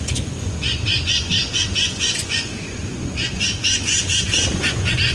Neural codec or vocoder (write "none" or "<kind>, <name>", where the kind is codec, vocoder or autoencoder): vocoder, Vocos